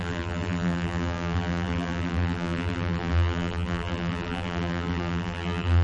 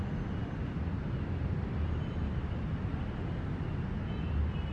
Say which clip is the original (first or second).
second